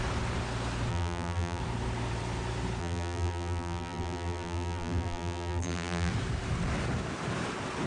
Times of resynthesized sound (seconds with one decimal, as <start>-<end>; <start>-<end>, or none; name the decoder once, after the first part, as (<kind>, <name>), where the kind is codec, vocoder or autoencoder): 0.9-1.6 (vocoder, BigVGAN v2); 2.8-6.1